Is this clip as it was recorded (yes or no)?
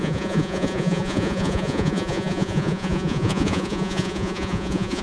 no